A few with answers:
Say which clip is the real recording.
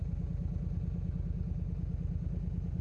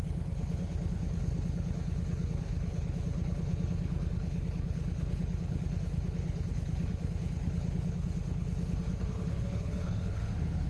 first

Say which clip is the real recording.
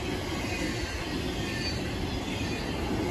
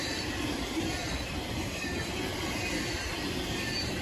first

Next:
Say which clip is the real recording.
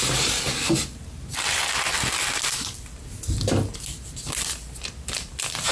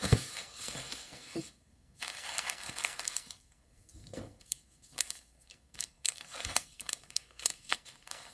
first